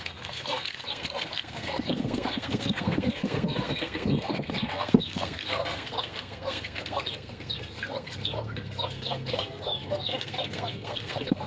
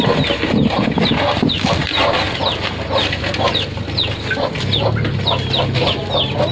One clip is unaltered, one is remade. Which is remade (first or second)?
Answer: first